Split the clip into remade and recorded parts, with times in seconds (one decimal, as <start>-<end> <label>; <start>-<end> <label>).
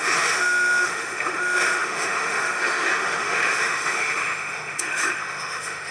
0.0-5.9 remade